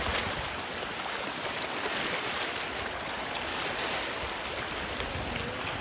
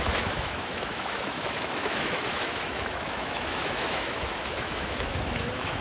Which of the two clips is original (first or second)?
first